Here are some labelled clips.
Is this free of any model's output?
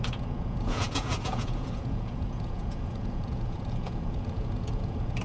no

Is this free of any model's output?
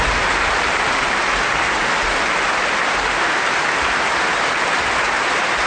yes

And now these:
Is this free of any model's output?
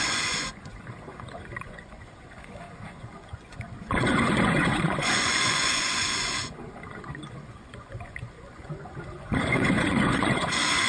no